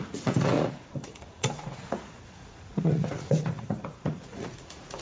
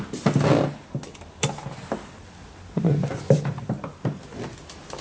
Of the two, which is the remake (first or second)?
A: first